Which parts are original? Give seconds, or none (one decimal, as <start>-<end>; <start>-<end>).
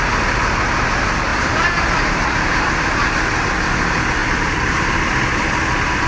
0.0-1.3; 2.7-4.2